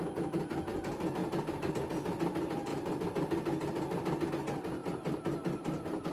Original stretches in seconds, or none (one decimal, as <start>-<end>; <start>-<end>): 0.0-6.1